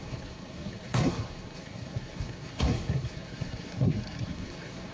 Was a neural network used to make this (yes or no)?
yes